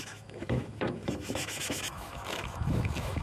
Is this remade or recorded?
remade